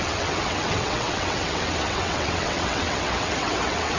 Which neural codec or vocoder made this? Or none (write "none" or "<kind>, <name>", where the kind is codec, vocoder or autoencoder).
vocoder, WaveNeXt